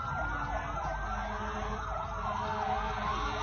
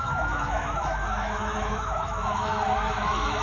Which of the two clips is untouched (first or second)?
first